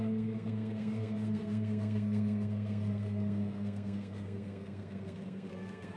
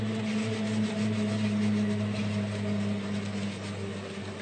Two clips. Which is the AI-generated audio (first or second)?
first